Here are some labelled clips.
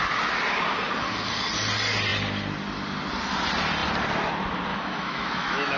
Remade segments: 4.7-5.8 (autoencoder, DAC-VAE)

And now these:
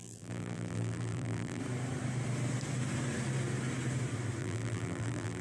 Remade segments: 0.0-1.6 (vocoder, BigVGAN v2); 4.4-5.4

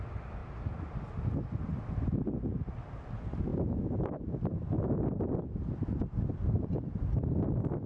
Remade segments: none

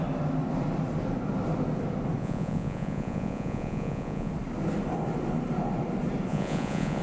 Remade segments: 2.2-4.3 (vocoder, Vocos); 6.3-7.0

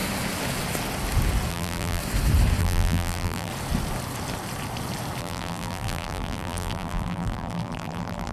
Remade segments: 1.5-2.0 (vocoder, BigVGAN v2); 2.6-3.5; 5.2-8.3

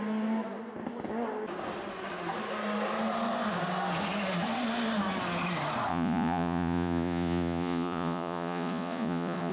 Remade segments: 5.9-9.5 (vocoder, Vocos)

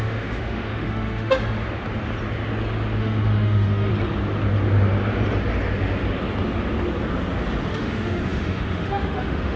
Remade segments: 0.0-1.4 (autoencoder, DAC-VAE); 3.0-3.9; 7.7-9.6

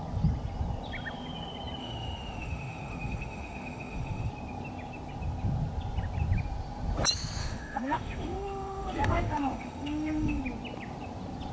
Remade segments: 1.8-4.3 (autoencoder, DAC-VAE); 7.4-10.4